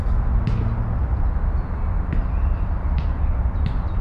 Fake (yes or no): no